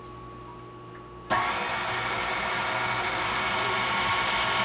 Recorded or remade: recorded